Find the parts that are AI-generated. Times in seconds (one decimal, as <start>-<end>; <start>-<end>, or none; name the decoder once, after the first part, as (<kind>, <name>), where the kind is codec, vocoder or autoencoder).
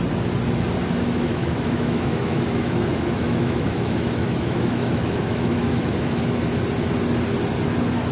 1.3-6.2 (autoencoder, DAC-VAE)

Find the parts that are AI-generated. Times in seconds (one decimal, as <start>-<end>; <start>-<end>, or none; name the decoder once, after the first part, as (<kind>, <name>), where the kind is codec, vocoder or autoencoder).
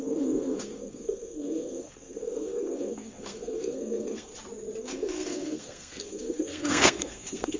0.0-4.3 (codec, SNAC); 4.8-7.6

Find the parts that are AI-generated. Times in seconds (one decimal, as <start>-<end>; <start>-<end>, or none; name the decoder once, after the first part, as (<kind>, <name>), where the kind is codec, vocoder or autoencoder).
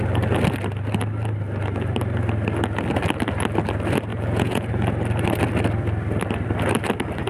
4.1-4.7 (vocoder, Vocos)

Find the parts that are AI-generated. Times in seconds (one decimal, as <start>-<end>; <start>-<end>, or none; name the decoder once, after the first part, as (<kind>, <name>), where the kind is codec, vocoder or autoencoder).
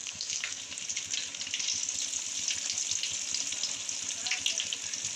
0.0-0.6 (codec, SNAC)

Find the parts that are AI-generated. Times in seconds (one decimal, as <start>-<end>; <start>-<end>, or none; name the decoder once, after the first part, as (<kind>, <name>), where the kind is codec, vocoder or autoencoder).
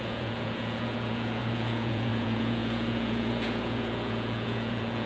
0.0-5.1 (vocoder, Vocos)